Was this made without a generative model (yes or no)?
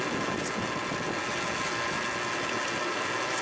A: yes